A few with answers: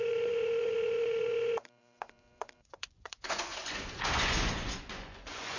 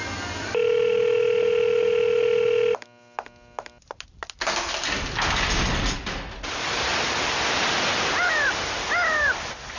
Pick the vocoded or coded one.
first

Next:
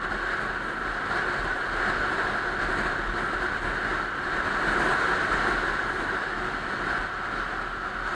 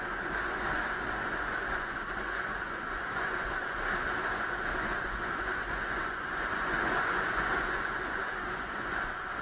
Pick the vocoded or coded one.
second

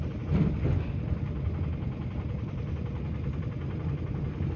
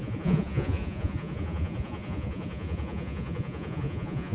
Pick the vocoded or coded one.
second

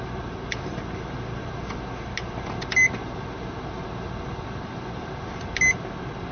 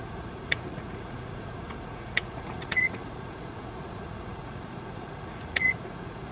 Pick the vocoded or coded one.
second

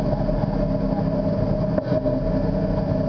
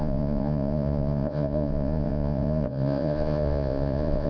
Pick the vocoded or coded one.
second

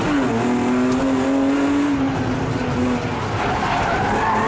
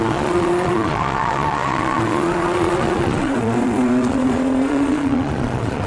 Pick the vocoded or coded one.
second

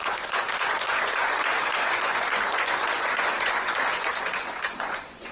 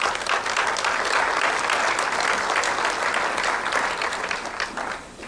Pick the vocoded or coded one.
first